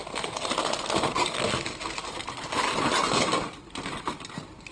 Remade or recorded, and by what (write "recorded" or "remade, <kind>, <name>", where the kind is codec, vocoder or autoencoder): recorded